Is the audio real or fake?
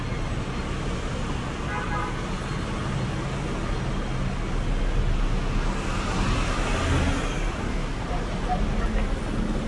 real